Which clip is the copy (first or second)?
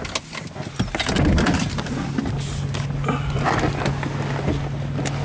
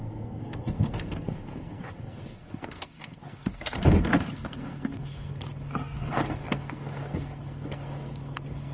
second